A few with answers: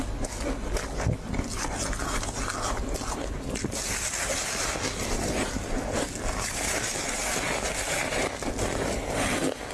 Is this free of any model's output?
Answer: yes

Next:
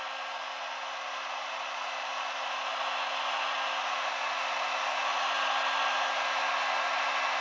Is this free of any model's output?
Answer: yes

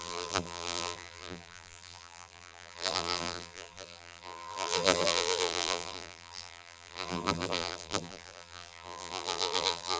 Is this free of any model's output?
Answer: no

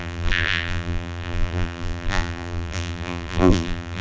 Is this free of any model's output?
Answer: no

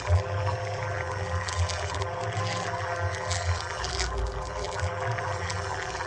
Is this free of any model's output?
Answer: no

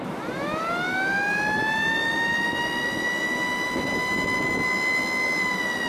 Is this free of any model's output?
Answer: yes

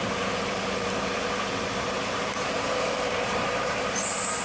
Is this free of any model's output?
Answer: no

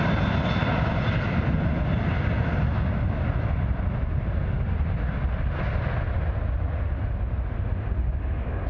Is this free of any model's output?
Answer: yes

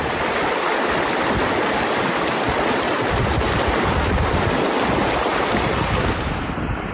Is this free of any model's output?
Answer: yes